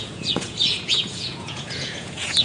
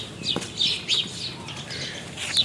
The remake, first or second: first